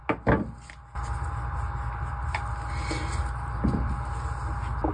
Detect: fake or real real